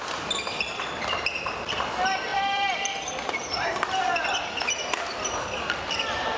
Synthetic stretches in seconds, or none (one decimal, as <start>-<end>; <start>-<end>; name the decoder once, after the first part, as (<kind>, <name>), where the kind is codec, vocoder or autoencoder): 0.0-6.4 (vocoder, BigVGAN v2)